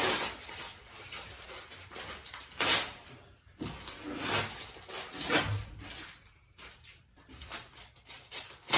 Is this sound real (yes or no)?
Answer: yes